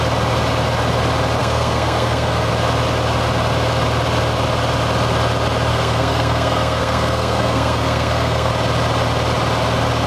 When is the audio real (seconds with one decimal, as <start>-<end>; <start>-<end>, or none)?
0.0-1.4; 2.5-5.7; 8.5-10.1